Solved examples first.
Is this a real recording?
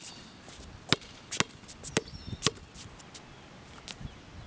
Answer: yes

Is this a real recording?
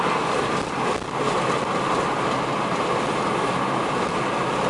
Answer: yes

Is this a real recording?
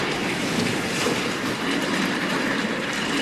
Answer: no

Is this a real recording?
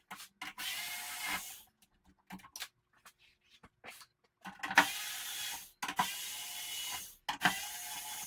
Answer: yes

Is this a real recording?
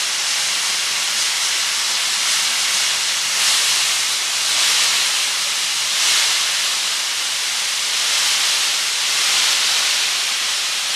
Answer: yes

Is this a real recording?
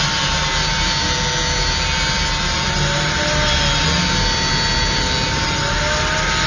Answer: yes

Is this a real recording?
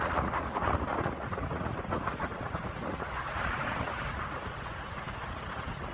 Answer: no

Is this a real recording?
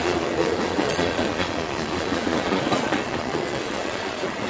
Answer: no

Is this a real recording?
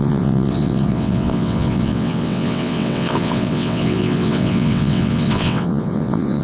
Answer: no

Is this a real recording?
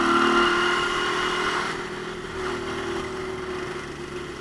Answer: yes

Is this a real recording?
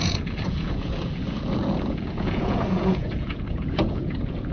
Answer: no